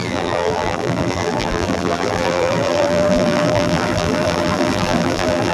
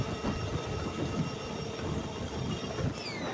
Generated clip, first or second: first